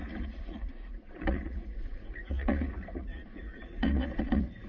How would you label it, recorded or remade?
remade